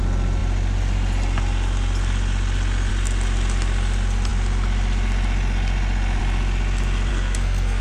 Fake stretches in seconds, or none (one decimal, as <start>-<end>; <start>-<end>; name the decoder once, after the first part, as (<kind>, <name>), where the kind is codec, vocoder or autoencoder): 7.1-7.8 (codec, SNAC)